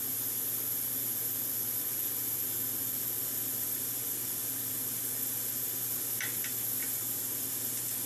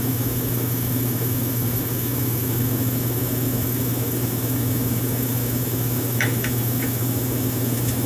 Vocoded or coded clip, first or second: second